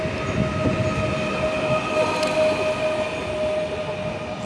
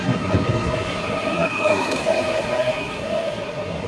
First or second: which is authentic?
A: first